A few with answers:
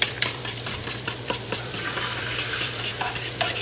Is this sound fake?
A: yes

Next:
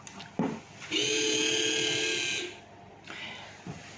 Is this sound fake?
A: no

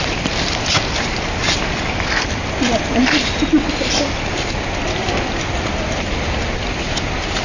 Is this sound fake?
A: yes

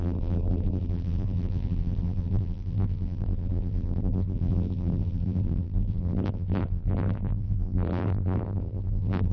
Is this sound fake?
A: yes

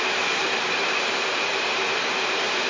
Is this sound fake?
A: yes